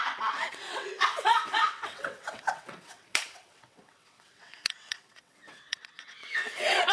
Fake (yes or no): yes